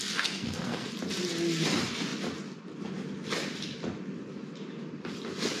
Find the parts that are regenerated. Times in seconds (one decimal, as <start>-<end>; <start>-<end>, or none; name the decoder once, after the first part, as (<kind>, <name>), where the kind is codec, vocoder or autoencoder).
0.0-0.9 (codec, SNAC)